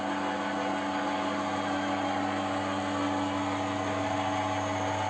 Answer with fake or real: real